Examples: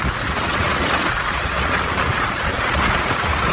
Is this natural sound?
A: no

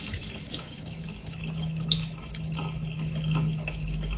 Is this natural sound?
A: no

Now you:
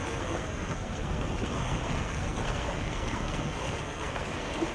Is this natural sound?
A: no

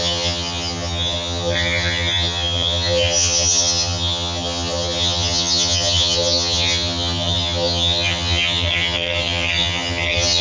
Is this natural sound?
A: no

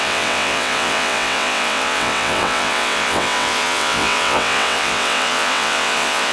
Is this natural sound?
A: no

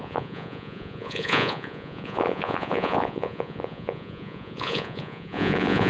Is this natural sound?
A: no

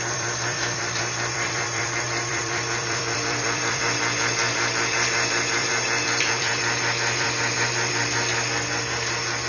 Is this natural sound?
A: no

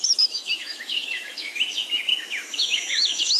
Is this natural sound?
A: no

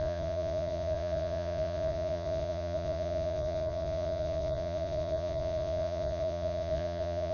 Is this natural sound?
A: no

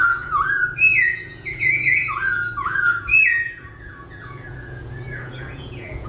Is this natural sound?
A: no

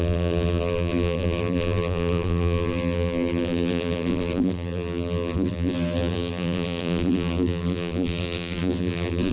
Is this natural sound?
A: no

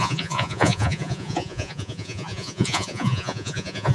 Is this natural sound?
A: no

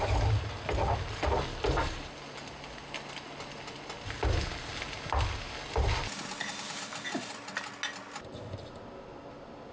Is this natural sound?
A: yes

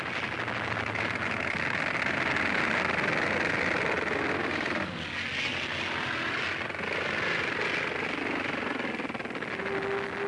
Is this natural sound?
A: yes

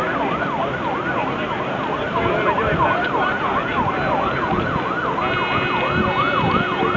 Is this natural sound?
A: yes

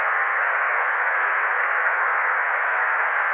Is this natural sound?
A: no